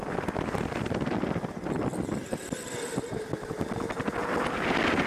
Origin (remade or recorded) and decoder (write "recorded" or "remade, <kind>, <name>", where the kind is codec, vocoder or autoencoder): recorded